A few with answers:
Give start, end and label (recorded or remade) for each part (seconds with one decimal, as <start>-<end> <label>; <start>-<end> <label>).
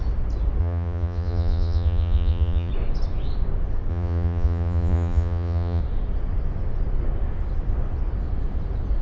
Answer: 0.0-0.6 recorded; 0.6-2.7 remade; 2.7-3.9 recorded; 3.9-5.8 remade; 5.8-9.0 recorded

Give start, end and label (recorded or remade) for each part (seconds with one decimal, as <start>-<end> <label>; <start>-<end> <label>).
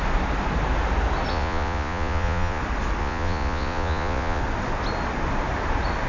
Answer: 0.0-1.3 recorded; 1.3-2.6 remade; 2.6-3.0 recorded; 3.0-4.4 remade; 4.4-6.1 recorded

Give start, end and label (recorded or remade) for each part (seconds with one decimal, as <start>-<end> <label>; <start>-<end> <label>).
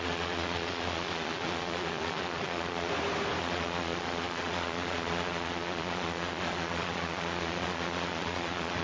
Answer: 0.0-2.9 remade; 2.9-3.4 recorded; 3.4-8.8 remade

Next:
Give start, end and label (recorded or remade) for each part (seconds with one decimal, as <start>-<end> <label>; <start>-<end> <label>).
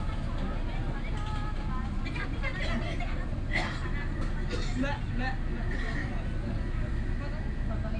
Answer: 0.0-8.0 recorded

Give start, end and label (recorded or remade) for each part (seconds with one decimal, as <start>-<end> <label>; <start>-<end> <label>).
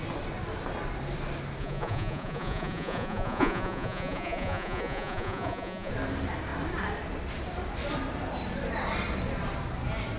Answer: 0.0-1.6 recorded; 1.6-5.9 remade; 5.9-10.2 recorded